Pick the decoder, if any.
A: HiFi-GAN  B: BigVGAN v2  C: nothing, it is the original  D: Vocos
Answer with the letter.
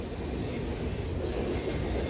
C